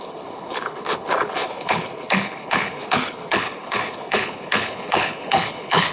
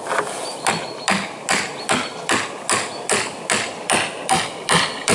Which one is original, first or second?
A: second